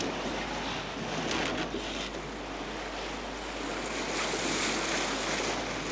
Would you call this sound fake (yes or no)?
no